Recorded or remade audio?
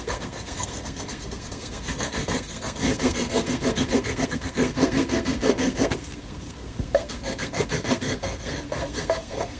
remade